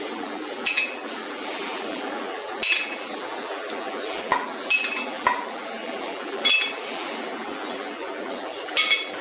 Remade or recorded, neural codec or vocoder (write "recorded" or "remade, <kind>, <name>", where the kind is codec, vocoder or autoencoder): remade, vocoder, BigVGAN v2